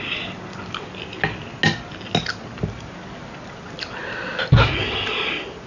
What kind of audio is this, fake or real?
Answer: real